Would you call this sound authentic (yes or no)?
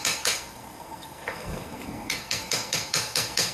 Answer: no